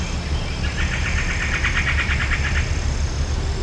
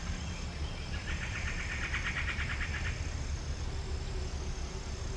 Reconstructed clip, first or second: second